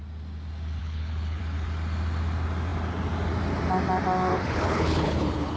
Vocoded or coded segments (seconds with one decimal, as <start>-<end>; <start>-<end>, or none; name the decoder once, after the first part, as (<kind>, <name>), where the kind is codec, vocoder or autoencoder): 0.8-1.4 (codec, HILCodec); 4.3-5.6

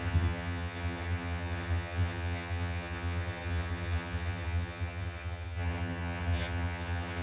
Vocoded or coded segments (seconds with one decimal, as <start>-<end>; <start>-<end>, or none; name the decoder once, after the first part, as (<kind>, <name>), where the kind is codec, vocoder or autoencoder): 0.0-7.2 (vocoder, HiFi-GAN)